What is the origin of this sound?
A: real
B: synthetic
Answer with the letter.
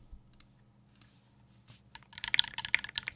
A